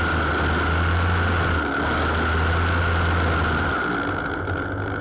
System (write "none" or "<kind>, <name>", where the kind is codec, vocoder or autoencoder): none